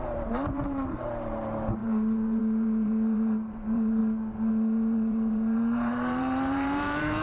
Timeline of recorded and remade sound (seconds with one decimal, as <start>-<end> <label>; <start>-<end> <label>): 0.0-4.0 remade; 4.0-4.5 recorded; 4.5-7.2 remade

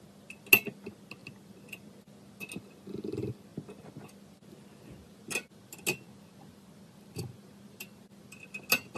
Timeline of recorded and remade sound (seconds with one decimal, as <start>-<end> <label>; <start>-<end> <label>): 0.0-1.2 recorded; 1.2-1.9 remade; 1.9-9.0 recorded

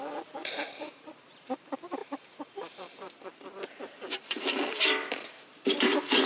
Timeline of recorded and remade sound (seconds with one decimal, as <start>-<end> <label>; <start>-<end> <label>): 0.0-6.3 remade

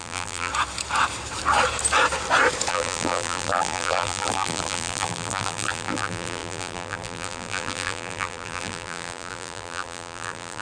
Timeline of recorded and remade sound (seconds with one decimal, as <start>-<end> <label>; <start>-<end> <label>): 0.0-0.5 remade; 0.5-2.7 recorded; 2.7-10.6 remade